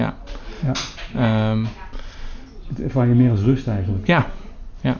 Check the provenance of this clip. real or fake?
real